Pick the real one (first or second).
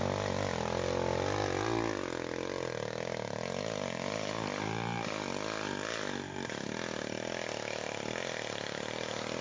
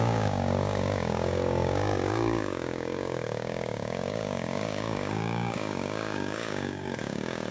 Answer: first